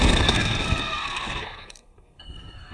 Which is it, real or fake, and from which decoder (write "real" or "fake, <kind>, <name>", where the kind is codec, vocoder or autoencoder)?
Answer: fake, codec, SNAC